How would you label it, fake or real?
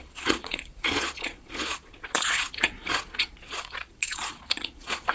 fake